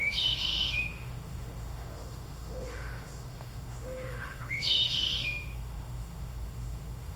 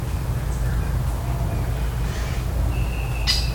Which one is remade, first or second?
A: first